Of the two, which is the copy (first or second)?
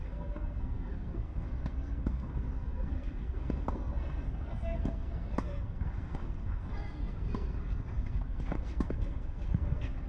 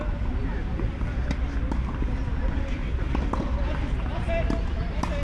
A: first